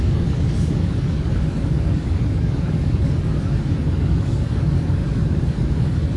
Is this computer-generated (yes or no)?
yes